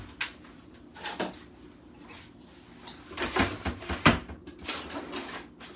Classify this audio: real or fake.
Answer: real